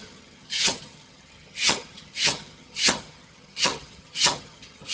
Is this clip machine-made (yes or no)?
yes